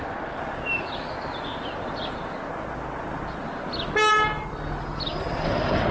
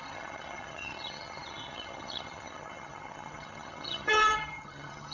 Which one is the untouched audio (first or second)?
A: first